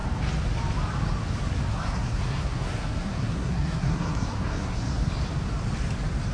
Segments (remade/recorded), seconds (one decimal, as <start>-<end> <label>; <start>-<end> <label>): 0.0-1.7 recorded; 1.7-5.1 remade; 5.1-6.3 recorded